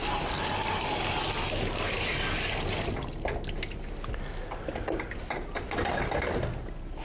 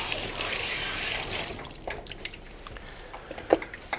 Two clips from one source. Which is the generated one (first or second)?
second